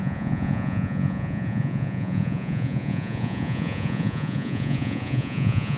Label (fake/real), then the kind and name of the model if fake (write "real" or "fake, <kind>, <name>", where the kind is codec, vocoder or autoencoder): fake, vocoder, Vocos